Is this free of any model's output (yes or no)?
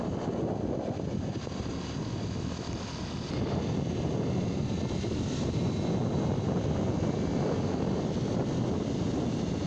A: yes